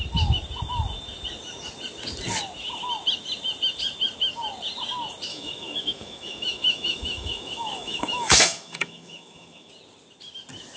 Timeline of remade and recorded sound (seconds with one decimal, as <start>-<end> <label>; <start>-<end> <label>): 0.0-5.3 recorded; 5.3-9.7 remade; 9.7-10.8 recorded